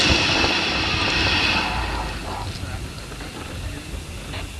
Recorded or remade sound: recorded